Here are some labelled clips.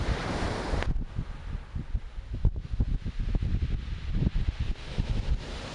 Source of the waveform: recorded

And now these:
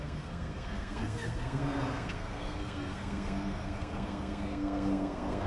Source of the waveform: remade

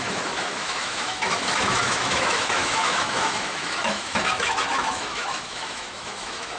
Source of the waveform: remade